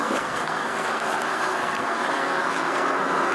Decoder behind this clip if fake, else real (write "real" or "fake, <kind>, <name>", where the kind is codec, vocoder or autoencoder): fake, codec, SNAC